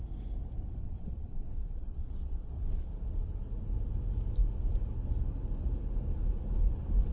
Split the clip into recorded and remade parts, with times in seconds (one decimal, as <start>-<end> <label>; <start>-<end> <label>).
0.0-0.8 recorded; 0.8-2.5 remade; 2.5-7.1 recorded